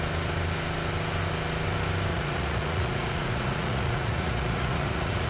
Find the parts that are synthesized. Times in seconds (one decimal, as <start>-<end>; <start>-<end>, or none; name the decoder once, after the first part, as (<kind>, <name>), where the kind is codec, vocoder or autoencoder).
2.1-5.3 (vocoder, Vocos)